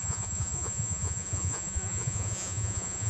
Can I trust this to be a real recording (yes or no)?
no